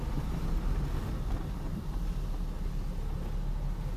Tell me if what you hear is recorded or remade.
recorded